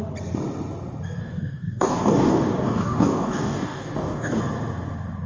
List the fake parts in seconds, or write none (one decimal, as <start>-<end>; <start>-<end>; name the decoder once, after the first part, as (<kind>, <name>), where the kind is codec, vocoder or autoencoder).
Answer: 1.2-4.4 (codec, DAC)